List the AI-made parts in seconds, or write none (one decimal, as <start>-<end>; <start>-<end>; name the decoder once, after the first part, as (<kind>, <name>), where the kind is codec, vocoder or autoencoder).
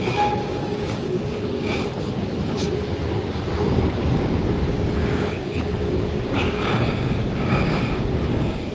0.0-1.8 (codec, DAC); 3.9-8.7